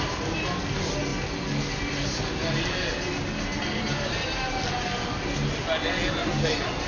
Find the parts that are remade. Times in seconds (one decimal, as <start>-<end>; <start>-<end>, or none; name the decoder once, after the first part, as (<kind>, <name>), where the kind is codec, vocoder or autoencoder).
none